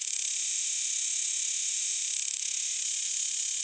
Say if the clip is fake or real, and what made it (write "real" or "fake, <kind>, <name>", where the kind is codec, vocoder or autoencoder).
fake, vocoder, Vocos